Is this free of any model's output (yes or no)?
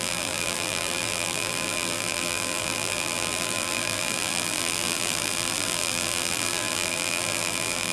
no